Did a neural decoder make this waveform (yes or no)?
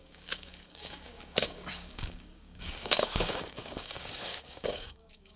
yes